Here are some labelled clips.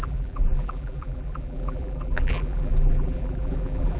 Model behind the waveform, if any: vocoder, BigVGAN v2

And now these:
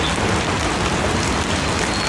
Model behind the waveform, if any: none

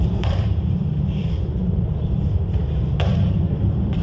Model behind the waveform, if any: vocoder, BigVGAN v2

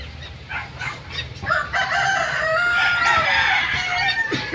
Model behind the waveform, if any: vocoder, BigVGAN v2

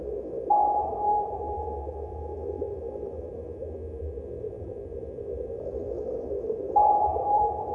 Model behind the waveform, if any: vocoder, BigVGAN v2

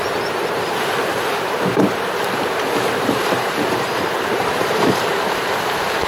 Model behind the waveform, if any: vocoder, BigVGAN v2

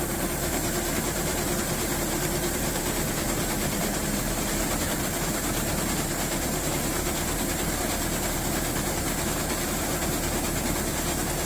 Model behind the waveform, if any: vocoder, BigVGAN v2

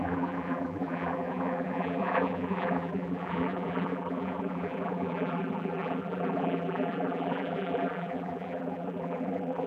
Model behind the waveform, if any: vocoder, BigVGAN v2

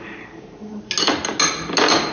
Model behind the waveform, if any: none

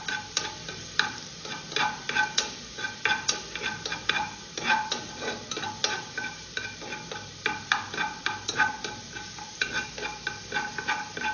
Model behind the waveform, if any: none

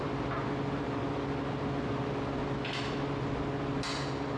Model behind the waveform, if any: none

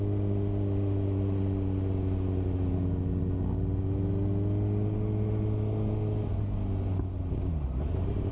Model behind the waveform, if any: none